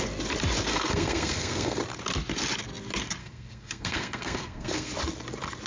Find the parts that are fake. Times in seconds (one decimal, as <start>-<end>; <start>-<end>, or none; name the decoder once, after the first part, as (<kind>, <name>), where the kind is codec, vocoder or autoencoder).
0.7-1.8 (codec, SNAC); 3.2-4.9